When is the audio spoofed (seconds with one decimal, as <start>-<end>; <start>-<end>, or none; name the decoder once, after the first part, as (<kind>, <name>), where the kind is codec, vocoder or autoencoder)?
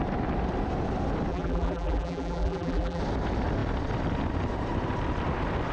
1.3-3.0 (vocoder, BigVGAN v2)